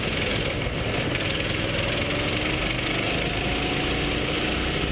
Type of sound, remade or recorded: recorded